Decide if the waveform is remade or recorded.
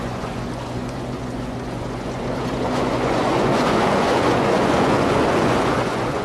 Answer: remade